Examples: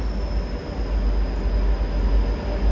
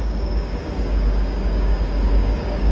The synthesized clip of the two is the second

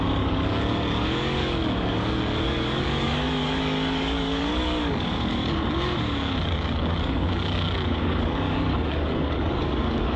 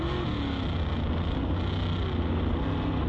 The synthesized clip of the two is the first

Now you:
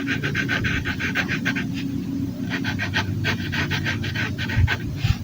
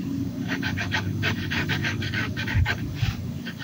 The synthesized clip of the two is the second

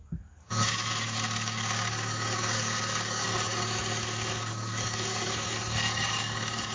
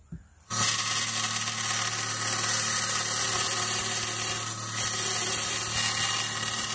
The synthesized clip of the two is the first